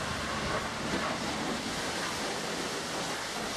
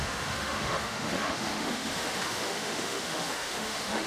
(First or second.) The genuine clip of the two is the first